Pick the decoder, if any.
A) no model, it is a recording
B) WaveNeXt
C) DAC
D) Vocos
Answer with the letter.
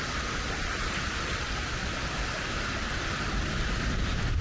A